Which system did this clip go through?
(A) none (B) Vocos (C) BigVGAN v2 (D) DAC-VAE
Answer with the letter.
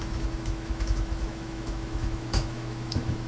D